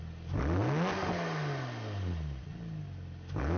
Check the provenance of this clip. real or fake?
real